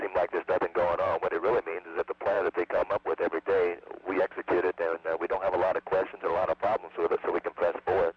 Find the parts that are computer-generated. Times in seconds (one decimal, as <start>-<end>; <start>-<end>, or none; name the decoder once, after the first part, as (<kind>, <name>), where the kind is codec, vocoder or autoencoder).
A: 0.0-8.2 (vocoder, BigVGAN v2)